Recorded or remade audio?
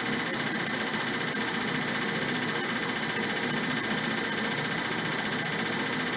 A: recorded